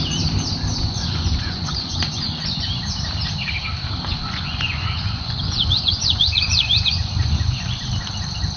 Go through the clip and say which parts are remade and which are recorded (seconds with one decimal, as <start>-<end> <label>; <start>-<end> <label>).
0.0-0.7 recorded; 0.7-2.8 remade; 2.8-4.1 recorded; 4.1-7.8 remade; 7.8-8.6 recorded